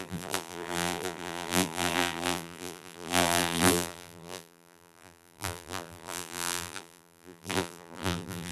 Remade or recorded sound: remade